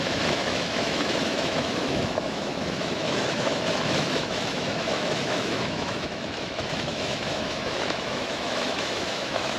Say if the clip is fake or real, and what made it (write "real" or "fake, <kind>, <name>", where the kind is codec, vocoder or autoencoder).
fake, autoencoder, DAC-VAE